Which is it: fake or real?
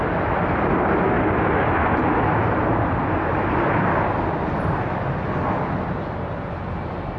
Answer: real